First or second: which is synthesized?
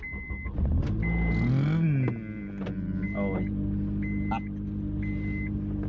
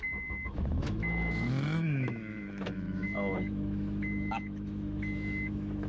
second